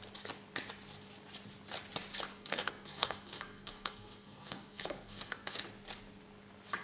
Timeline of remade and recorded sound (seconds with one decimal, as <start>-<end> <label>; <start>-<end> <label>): 0.0-2.3 recorded; 2.3-5.6 remade; 5.6-6.8 recorded